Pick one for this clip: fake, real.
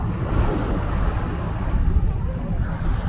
real